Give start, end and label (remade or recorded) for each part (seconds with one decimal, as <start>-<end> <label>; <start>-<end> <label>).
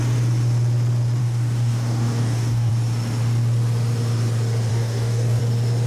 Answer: 0.0-1.2 recorded; 1.2-2.7 remade; 2.7-4.7 recorded; 4.7-5.4 remade; 5.4-5.9 recorded